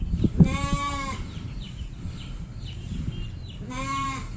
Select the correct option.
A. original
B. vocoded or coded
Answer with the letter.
B